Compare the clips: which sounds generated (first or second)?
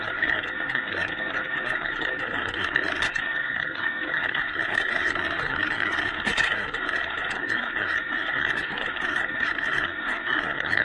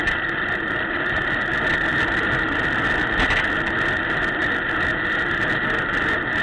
first